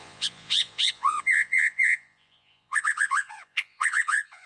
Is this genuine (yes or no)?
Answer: no